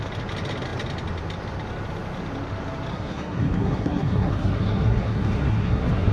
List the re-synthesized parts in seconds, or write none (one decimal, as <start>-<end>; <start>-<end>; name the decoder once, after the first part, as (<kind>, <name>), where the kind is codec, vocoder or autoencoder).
2.9-6.1 (codec, SNAC)